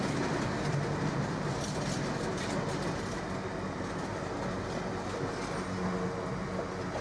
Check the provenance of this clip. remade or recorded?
recorded